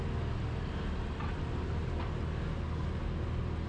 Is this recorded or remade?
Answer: recorded